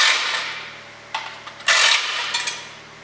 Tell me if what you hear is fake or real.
real